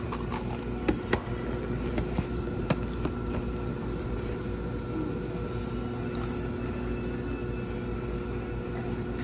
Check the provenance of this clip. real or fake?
real